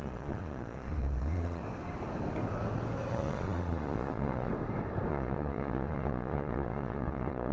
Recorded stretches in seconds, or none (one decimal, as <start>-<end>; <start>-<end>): 1.6-3.1; 4.5-5.1